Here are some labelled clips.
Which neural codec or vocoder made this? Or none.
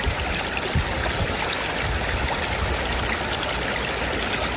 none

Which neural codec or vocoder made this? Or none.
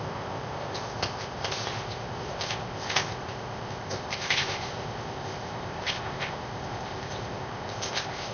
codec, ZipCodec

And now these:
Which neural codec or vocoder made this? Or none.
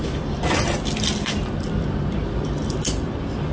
none